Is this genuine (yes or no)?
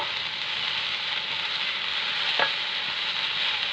yes